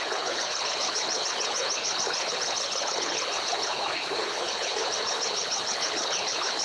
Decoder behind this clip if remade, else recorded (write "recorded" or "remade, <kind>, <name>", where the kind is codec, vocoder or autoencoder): remade, codec, HILCodec